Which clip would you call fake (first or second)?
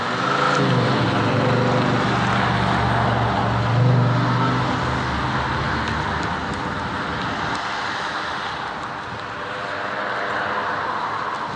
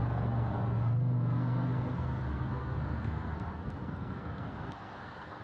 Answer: second